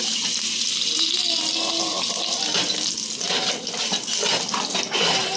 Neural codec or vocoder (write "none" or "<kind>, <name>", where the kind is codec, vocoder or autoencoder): none